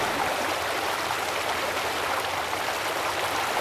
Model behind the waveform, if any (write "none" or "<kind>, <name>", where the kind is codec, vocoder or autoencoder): none